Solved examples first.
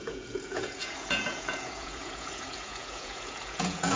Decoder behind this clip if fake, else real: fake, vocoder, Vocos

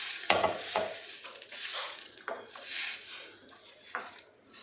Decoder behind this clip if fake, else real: fake, vocoder, Vocos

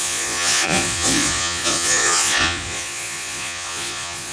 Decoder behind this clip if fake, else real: fake, vocoder, Vocos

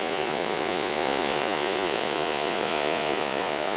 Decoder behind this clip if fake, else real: fake, vocoder, Vocos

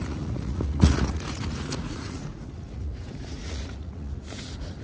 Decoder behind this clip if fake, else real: fake, vocoder, Vocos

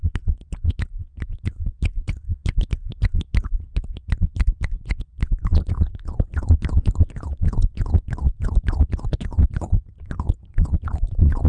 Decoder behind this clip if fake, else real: fake, vocoder, Vocos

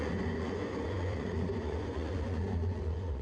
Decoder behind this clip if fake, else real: fake, vocoder, Vocos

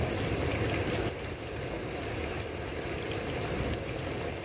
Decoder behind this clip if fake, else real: real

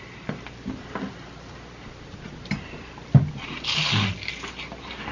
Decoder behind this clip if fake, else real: real